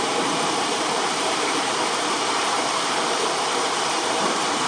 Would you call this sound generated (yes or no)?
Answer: yes